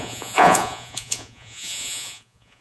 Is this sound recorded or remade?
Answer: remade